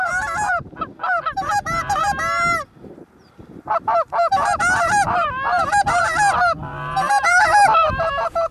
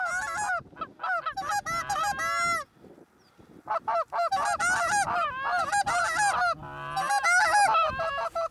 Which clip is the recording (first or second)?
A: second